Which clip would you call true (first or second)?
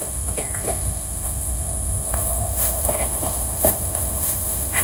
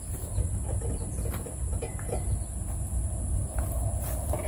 second